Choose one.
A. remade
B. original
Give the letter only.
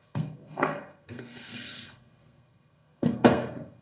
A